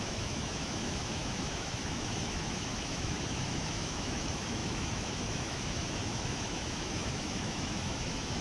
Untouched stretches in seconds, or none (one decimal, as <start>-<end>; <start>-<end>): none